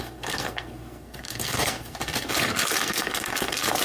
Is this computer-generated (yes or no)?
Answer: yes